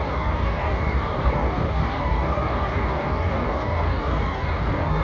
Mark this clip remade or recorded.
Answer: remade